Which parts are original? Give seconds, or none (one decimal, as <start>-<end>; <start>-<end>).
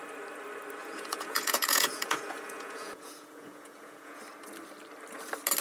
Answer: 0.0-0.8; 4.2-5.6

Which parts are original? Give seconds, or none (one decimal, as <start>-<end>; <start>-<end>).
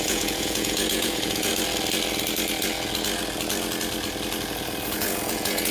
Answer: 1.5-4.9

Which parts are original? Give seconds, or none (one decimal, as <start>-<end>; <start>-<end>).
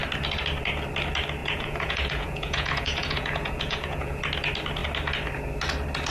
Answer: 0.0-1.4; 4.2-6.1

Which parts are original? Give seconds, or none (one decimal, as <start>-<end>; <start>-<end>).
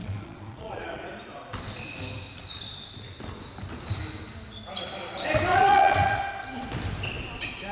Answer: 1.0-5.5; 6.2-7.7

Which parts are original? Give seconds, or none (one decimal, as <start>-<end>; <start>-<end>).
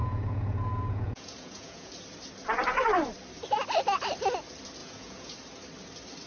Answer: 1.9-4.8; 5.3-6.3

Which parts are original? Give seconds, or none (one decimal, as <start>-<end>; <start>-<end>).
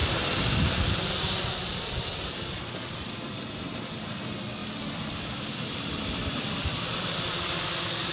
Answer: 0.0-8.1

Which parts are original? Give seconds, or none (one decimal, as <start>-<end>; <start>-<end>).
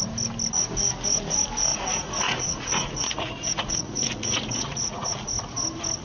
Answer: 0.0-1.7; 5.1-6.0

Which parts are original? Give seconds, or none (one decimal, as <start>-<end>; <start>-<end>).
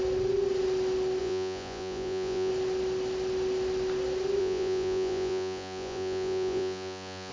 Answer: 0.0-1.2; 2.5-4.4